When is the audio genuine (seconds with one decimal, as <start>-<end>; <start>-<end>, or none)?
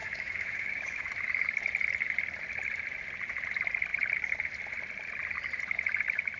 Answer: 1.1-6.4